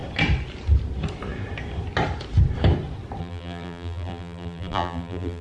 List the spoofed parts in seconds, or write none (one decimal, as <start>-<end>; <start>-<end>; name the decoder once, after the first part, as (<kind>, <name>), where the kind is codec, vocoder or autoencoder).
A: 3.2-5.4 (vocoder, BigVGAN v2)